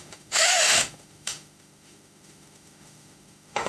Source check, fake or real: fake